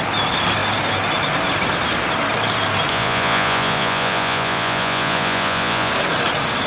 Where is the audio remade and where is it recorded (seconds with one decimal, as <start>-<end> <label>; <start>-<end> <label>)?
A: 0.0-2.9 recorded; 2.9-5.9 remade; 5.9-6.7 recorded